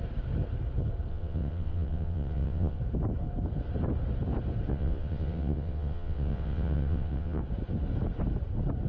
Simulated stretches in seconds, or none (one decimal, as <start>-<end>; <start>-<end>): 1.1-2.8; 4.7-7.4